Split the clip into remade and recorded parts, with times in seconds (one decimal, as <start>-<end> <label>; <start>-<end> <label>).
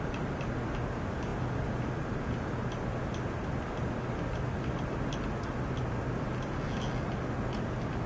0.0-8.1 recorded